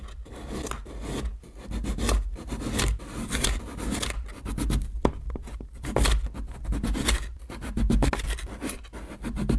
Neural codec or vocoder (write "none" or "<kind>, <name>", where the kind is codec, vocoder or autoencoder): none